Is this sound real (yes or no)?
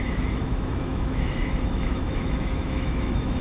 no